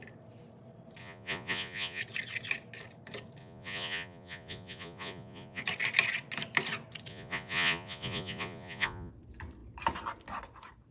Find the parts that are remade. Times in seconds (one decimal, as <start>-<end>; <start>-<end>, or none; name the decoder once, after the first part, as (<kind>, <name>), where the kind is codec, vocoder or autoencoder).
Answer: 1.0-2.0 (vocoder, Vocos); 3.4-5.6; 7.1-9.1